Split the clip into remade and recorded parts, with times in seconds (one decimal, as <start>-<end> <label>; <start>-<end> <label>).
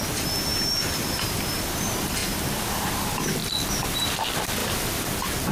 0.0-0.5 recorded; 0.5-1.6 remade; 1.6-2.2 recorded; 2.2-2.9 remade; 2.9-5.5 recorded